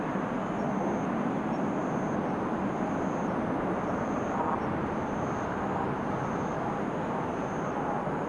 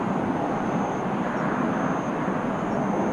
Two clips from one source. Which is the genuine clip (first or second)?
first